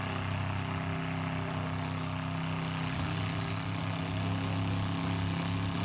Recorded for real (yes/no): yes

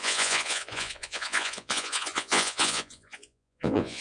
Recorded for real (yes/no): no